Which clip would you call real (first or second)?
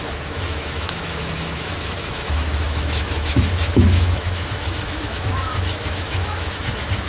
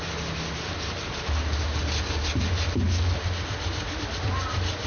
second